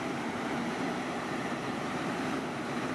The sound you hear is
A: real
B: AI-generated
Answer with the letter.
B